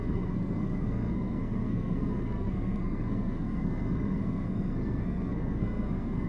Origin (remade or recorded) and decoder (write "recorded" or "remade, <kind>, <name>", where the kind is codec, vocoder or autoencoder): remade, codec, SNAC